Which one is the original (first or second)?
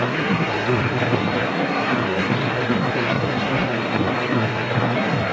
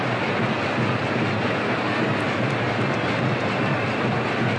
second